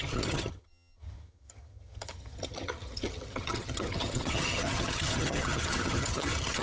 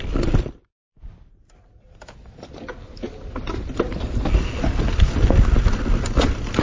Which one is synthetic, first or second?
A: first